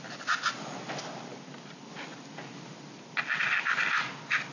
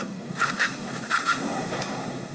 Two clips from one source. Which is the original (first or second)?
first